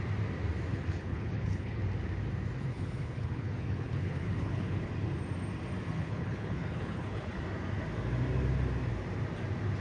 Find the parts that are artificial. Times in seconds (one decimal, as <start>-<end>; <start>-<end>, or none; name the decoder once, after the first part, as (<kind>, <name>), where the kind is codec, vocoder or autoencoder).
0.7-1.8 (codec, HILCodec); 2.7-4.9; 6.0-7.4